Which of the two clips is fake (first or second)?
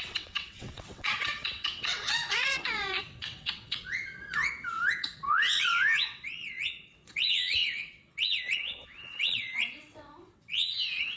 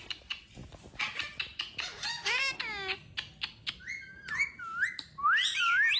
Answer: first